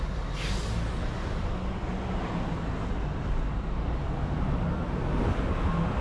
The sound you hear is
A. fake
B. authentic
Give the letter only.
B